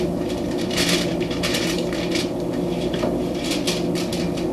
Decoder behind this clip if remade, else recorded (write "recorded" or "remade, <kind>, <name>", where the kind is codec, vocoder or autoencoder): recorded